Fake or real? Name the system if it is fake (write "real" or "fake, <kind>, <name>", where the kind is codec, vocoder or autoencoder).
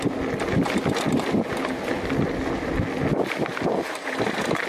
real